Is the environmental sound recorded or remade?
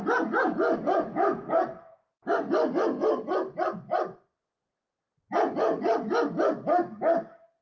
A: recorded